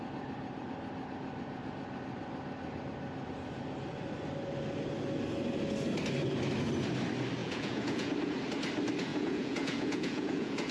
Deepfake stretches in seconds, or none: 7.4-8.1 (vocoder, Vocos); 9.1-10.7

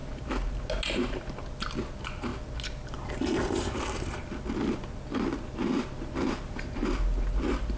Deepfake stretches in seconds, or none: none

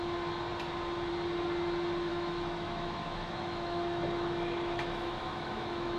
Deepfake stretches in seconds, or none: 2.1-6.0 (autoencoder, DAC-VAE)